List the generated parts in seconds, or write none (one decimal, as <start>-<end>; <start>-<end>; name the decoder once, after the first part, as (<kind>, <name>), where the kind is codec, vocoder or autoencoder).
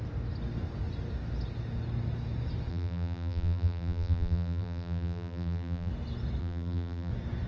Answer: 2.7-5.9 (vocoder, BigVGAN v2); 6.4-7.1